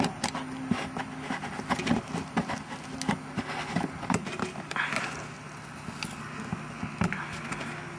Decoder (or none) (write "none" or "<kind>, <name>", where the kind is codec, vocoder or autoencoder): none